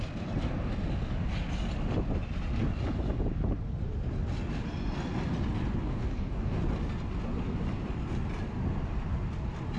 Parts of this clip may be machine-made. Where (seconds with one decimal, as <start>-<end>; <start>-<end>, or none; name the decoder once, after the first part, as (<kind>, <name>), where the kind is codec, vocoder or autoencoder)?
5.8-6.6 (codec, DAC)